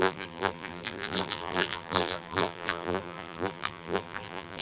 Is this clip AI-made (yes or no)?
yes